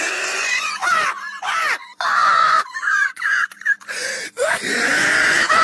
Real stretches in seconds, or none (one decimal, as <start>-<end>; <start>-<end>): none